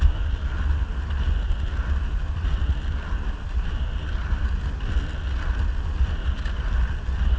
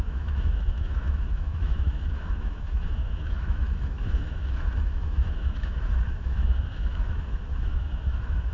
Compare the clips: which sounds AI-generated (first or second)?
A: second